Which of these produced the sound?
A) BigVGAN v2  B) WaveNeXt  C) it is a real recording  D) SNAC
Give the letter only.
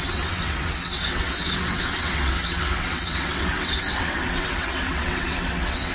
B